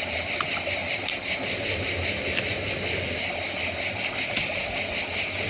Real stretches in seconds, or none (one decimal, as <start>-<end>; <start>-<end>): 0.0-5.5